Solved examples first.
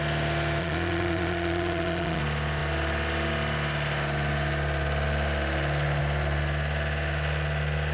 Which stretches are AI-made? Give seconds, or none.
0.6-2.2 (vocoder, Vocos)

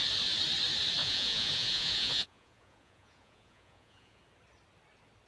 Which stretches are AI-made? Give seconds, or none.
1.0-4.2 (vocoder, Vocos)

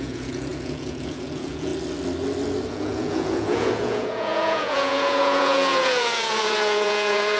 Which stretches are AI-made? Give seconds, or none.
0.0-1.7 (vocoder, Vocos); 2.7-7.4